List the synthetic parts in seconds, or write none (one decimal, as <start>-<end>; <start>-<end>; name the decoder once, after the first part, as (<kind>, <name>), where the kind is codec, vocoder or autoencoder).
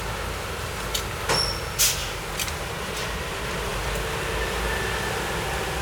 none